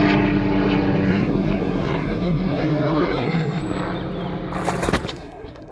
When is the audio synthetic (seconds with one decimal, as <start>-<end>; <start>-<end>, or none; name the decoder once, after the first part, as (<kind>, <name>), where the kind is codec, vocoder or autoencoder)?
1.1-3.6 (codec, SNAC); 5.1-5.7